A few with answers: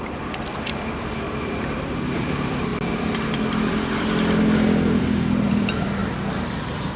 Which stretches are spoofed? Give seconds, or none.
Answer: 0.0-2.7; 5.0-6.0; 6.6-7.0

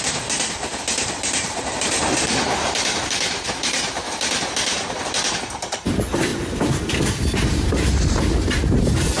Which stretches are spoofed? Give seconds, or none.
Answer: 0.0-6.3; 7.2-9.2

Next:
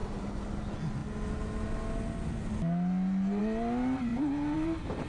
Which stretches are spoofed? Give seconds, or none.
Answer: 0.0-0.6; 4.1-5.1

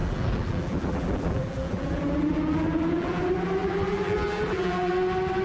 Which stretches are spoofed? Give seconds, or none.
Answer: 0.0-3.2; 3.6-4.9

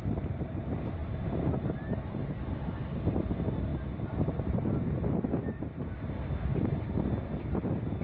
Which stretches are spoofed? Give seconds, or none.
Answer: none